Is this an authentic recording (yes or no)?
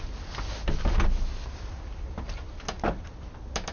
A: yes